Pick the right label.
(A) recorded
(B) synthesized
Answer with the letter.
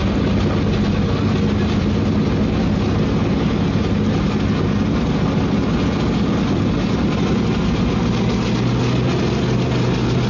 A